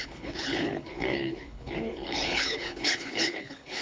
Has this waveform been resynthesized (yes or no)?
yes